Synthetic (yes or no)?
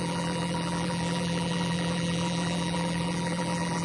yes